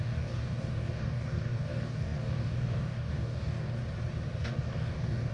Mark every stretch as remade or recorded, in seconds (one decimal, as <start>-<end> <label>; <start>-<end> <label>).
0.0-3.8 remade; 3.8-4.4 recorded; 4.4-5.3 remade